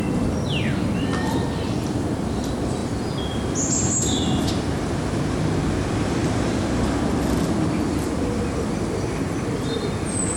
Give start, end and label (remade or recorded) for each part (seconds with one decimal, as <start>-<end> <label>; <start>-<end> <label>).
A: 0.0-6.2 recorded; 6.2-7.0 remade; 7.0-10.4 recorded